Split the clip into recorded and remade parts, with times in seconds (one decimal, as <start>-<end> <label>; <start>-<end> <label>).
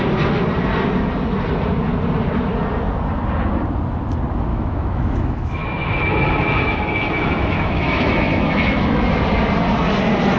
0.0-4.5 recorded; 4.5-9.0 remade; 9.0-10.4 recorded